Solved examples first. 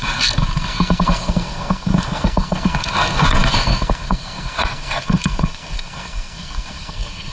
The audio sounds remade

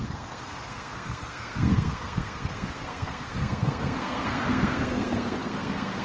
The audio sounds remade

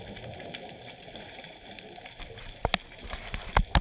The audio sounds recorded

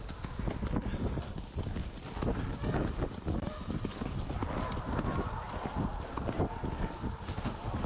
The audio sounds recorded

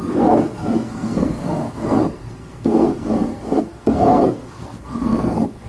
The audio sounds remade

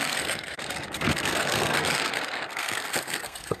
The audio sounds remade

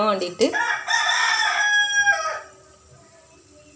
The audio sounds recorded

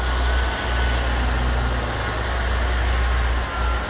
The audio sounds recorded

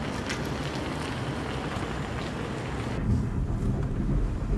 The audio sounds recorded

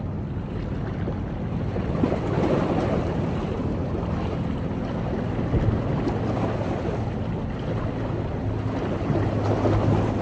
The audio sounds recorded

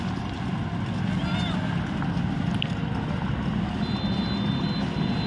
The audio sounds recorded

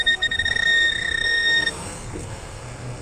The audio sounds remade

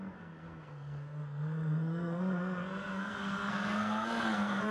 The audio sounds remade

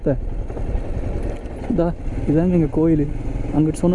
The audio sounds recorded